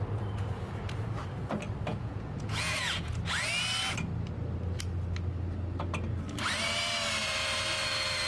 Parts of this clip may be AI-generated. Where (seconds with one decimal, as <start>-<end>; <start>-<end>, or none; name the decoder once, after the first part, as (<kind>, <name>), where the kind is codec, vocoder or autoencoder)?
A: 1.9-3.1 (vocoder, Vocos)